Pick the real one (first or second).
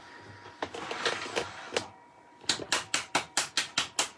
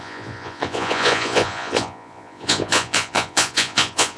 first